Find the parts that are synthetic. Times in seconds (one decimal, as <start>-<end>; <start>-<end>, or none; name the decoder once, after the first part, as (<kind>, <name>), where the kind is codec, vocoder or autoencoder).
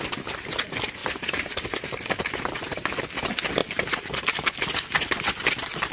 1.0-3.1 (vocoder, BigVGAN v2); 3.6-4.5